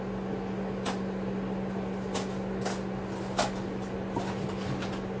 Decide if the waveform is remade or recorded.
recorded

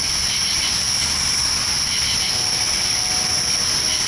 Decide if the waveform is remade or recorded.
recorded